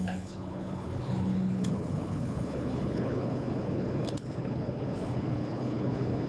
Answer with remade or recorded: remade